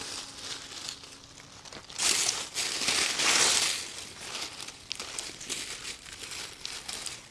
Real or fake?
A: real